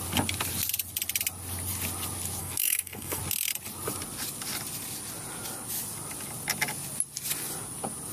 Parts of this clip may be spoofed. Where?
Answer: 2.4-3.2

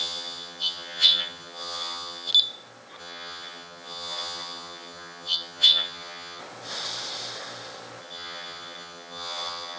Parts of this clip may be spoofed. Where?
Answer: 0.0-2.3; 3.0-6.4; 8.0-9.8

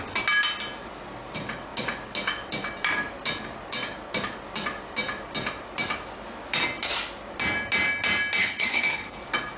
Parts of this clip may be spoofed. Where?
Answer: 8.4-9.2

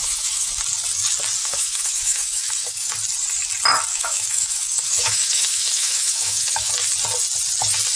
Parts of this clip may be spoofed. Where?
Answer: 0.0-0.5; 1.4-2.9; 3.9-6.7